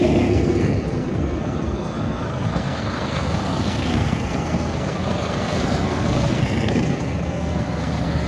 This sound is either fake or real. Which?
fake